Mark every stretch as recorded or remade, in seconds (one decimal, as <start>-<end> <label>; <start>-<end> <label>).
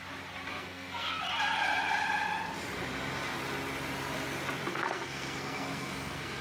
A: 0.0-0.5 recorded; 0.5-1.2 remade; 1.2-4.7 recorded; 4.7-6.4 remade